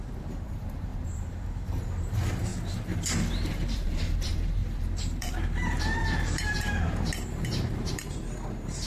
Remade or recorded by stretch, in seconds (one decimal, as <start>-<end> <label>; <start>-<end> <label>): 0.0-2.5 remade; 2.5-3.3 recorded; 3.3-8.9 remade